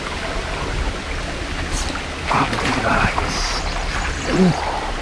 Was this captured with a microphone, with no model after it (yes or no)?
yes